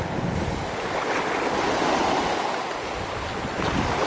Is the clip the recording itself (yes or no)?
yes